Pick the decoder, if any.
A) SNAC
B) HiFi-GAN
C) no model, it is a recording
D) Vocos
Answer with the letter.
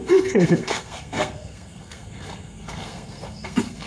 A